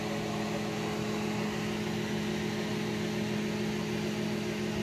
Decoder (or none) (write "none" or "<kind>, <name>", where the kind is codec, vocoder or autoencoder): none